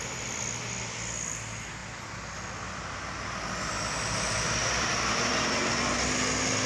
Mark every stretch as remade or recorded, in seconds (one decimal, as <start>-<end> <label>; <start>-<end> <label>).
0.0-4.6 recorded; 4.6-5.3 remade; 5.3-6.7 recorded